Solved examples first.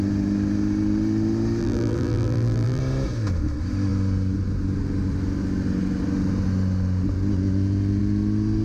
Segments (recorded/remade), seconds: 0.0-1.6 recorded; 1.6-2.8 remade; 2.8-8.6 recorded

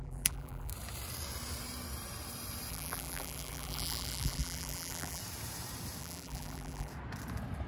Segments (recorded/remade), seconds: 0.0-0.7 remade; 0.7-2.7 recorded; 2.7-5.2 remade; 5.2-6.0 recorded; 6.0-6.9 remade; 6.9-7.7 recorded